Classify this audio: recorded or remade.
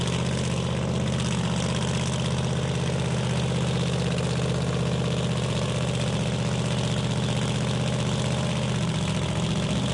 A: recorded